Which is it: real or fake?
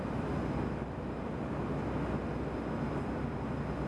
real